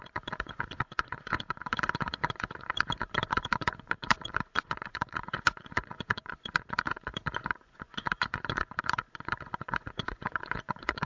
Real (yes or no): no